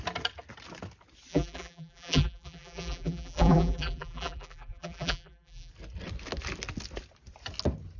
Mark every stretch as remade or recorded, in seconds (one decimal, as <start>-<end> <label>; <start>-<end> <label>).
0.0-1.3 recorded; 1.3-5.7 remade; 5.7-8.0 recorded